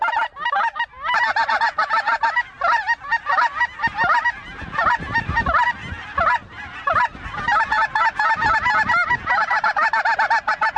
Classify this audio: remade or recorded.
recorded